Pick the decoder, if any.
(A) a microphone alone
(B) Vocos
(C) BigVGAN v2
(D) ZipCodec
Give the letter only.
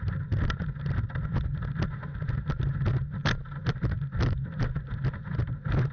A